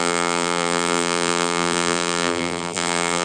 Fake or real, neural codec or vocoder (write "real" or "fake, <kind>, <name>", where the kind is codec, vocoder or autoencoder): fake, vocoder, BigVGAN v2